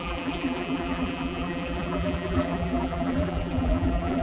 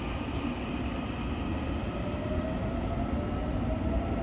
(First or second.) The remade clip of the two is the first